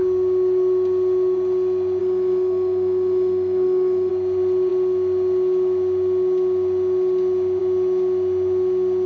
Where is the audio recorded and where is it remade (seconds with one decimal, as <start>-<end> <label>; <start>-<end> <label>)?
0.0-2.0 recorded; 2.0-4.1 remade; 4.1-9.1 recorded